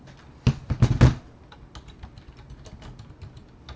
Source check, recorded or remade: recorded